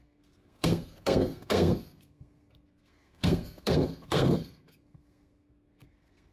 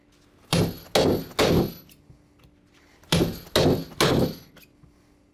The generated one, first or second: first